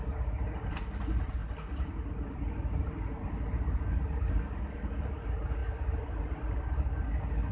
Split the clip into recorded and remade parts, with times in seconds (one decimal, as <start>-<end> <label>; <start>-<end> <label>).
0.0-7.5 recorded